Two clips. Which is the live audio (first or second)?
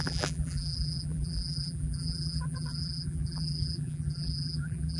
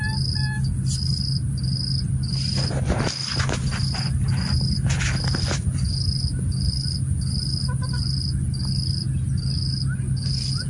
second